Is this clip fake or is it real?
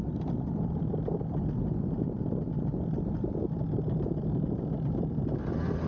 real